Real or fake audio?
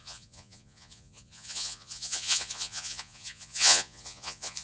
fake